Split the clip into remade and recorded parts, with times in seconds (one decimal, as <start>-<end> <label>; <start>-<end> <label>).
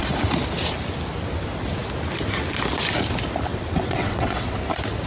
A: 0.0-3.5 recorded; 3.5-4.6 remade; 4.6-5.1 recorded